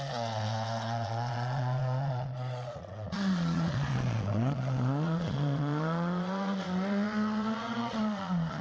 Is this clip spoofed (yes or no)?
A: yes